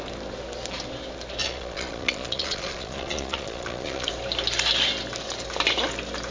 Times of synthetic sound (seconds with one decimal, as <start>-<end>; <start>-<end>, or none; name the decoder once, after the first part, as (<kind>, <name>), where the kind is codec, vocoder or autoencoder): 1.4-4.1 (vocoder, Vocos)